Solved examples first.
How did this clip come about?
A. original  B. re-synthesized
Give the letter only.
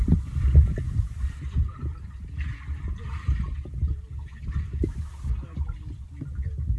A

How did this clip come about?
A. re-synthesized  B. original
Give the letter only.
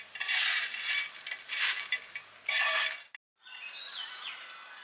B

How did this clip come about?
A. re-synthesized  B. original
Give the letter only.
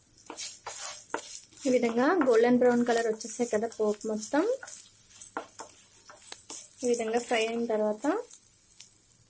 B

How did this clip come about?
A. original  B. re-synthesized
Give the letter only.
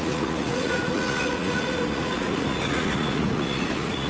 B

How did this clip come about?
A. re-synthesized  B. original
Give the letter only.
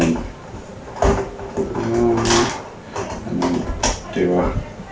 B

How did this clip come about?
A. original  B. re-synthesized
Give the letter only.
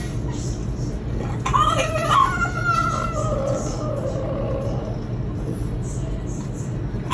A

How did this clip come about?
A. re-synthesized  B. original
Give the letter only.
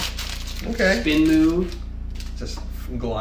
B